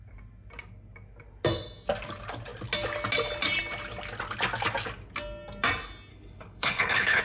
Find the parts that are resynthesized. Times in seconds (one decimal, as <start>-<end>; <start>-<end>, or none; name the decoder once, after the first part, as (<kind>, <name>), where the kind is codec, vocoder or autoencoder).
6.1-7.2 (codec, HILCodec)